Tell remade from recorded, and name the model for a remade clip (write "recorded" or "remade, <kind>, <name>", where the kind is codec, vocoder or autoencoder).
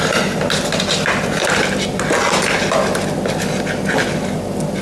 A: recorded